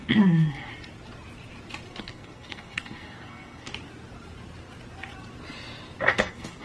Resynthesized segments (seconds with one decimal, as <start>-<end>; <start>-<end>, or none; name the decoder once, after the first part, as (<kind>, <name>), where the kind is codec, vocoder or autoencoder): 0.0-0.7 (codec, SNAC); 2.0-3.7; 6.0-6.6